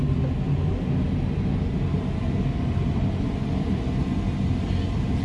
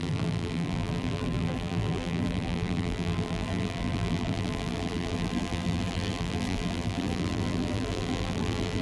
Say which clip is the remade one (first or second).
second